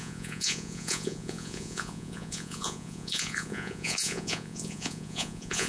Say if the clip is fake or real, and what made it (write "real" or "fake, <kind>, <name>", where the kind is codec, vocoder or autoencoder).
fake, vocoder, Vocos